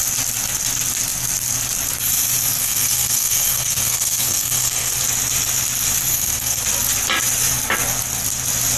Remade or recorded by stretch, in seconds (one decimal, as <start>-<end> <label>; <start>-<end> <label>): 0.0-2.6 recorded; 2.6-4.9 remade; 4.9-6.1 recorded; 6.1-6.6 remade; 6.6-8.8 recorded